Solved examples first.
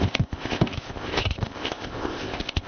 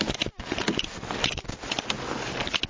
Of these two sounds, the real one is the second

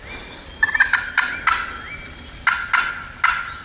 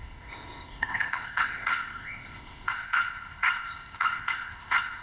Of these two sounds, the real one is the first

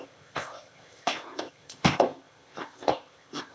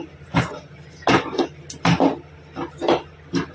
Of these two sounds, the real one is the second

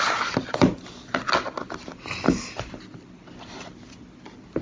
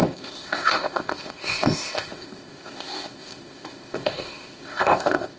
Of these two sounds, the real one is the first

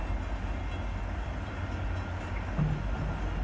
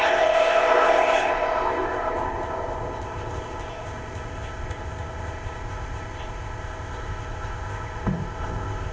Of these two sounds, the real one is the first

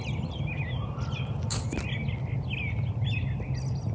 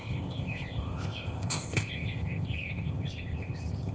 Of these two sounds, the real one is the first